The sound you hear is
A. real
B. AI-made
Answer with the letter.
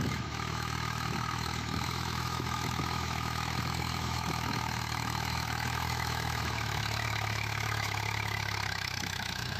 B